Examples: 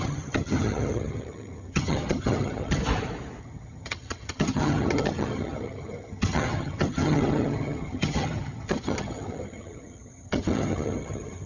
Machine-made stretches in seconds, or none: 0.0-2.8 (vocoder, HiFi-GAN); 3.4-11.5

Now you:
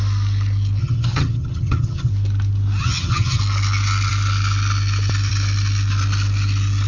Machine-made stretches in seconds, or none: 0.8-2.1 (vocoder, HiFi-GAN); 2.8-3.4

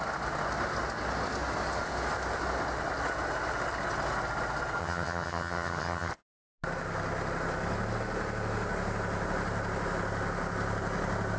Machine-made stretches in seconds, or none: 4.8-6.1 (vocoder, HiFi-GAN)

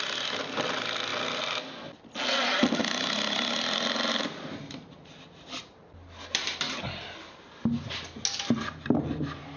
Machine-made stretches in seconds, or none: none